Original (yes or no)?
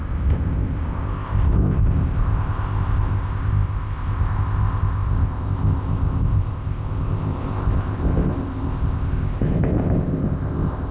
no